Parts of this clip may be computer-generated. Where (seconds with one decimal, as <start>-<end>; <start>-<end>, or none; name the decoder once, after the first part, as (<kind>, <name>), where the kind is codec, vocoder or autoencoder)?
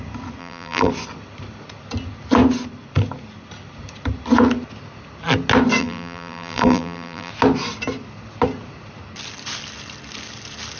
0.4-0.9 (vocoder, BigVGAN v2); 5.8-7.3